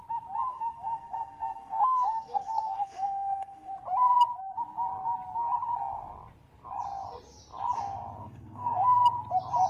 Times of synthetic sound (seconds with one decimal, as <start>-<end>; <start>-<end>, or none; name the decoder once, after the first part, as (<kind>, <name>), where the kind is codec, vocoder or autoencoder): 0.5-3.7 (codec, SNAC); 8.2-9.0